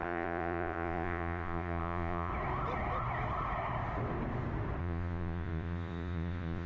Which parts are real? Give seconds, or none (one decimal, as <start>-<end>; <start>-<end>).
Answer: 2.3-4.8